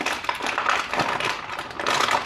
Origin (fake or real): real